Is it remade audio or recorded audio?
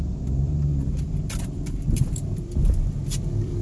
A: remade